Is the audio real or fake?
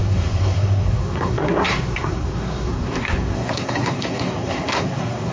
fake